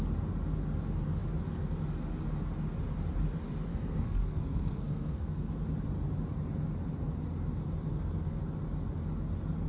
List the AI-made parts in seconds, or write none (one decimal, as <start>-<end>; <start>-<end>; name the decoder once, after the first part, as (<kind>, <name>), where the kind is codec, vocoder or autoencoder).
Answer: 3.7-5.5 (codec, SNAC); 7.9-8.4